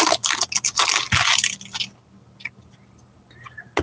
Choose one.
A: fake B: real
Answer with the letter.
B